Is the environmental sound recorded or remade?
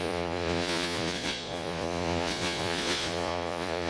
remade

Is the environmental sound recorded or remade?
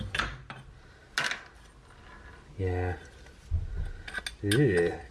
recorded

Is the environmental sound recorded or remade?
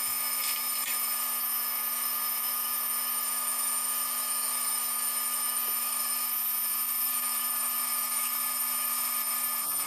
remade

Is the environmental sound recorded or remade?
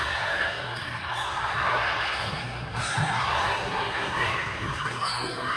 remade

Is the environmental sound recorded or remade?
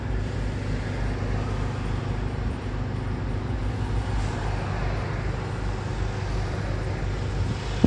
recorded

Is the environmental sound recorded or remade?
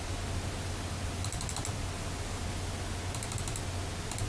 recorded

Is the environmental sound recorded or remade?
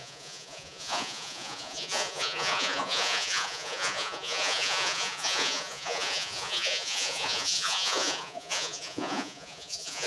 remade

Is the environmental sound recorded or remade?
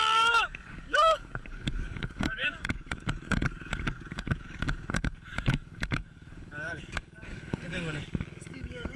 remade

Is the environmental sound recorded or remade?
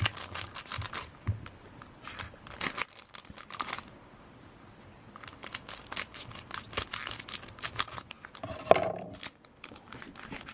recorded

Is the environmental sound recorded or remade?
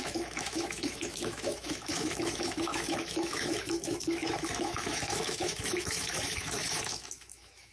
remade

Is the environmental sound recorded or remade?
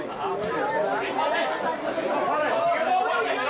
recorded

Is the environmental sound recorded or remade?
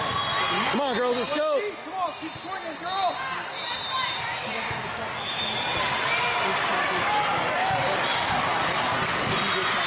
recorded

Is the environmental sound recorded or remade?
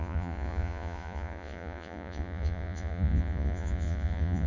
remade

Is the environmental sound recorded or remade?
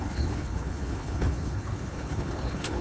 remade